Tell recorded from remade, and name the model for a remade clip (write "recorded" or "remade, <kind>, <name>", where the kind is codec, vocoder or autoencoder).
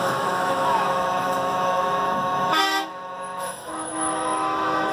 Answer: remade, autoencoder, DAC-VAE